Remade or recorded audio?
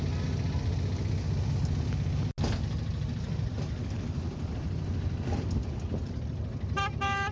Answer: recorded